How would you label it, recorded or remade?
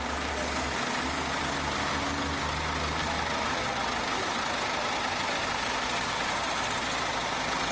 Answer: recorded